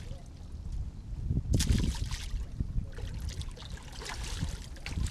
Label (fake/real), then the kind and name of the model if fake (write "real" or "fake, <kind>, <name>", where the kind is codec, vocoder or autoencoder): real